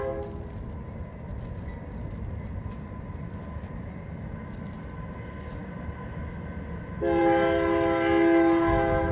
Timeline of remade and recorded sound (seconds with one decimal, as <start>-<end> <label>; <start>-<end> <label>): 0.0-9.1 recorded